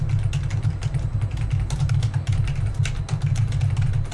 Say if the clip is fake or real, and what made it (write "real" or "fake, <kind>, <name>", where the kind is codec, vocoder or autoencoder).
real